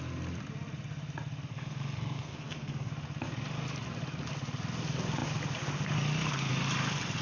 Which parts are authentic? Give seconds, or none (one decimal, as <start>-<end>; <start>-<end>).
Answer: 0.0-1.5; 2.9-7.2